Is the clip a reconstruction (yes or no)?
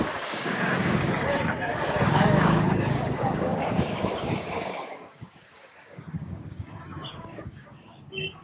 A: yes